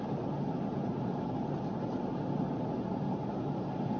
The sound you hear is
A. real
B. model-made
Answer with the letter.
A